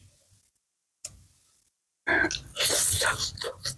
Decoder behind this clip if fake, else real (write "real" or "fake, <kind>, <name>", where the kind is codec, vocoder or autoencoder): real